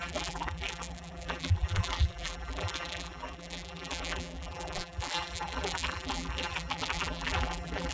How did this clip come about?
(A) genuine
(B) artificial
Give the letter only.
B